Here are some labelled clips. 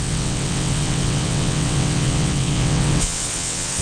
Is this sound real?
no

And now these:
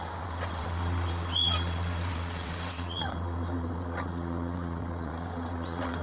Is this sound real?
no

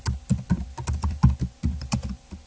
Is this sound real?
yes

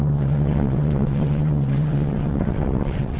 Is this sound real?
no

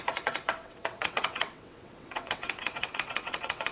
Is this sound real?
no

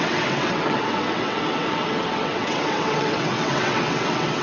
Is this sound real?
no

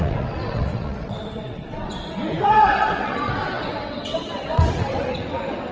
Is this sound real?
no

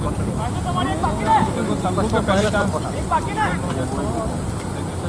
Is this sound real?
yes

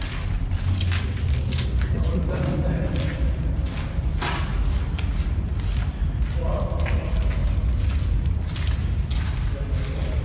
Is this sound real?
yes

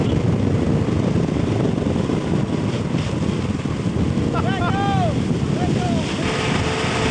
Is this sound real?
yes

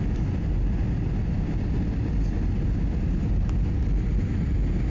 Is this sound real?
yes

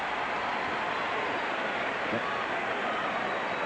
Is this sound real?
yes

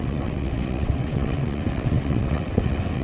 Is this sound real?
no